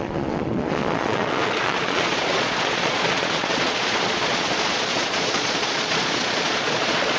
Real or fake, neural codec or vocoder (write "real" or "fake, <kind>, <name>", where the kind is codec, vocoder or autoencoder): fake, vocoder, Vocos